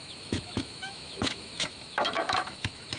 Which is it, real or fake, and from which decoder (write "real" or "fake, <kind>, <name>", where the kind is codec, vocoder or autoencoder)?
fake, autoencoder, DAC-VAE